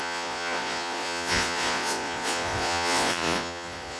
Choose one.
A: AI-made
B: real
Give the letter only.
A